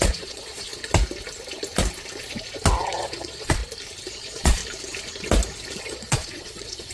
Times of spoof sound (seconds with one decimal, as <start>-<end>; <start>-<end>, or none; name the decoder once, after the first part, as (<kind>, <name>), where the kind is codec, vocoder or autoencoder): 0.0-0.7 (vocoder, Vocos); 2.8-3.6; 4.1-4.6; 5.8-6.9